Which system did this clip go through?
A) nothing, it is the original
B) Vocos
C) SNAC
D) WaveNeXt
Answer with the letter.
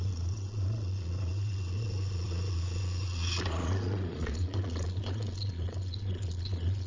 B